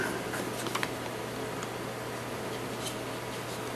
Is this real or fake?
real